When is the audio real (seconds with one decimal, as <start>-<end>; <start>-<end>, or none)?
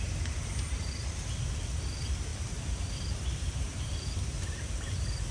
0.0-5.3